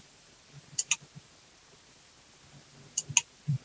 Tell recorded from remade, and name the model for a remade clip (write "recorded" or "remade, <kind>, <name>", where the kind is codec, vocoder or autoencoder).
recorded